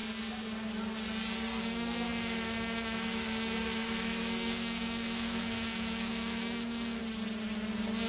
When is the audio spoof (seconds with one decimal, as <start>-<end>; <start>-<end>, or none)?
1.6-7.0